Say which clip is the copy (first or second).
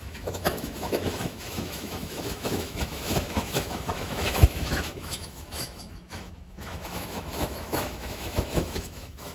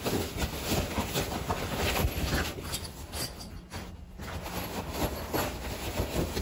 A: first